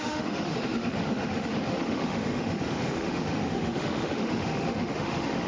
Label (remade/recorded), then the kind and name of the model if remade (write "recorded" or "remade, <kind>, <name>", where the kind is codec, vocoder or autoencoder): remade, autoencoder, DAC-VAE